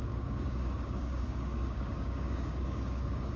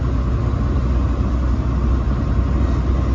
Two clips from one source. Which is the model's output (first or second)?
first